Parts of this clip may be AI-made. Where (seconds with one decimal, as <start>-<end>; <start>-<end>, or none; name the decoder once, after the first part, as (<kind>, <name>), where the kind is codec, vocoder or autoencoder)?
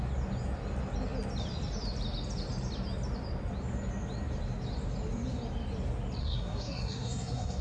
6.2-7.6 (codec, SNAC)